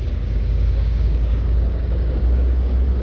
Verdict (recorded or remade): remade